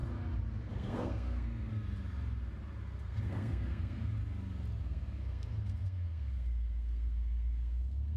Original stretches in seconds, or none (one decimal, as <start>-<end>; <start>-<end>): 0.0-0.7; 1.7-3.0; 4.2-4.8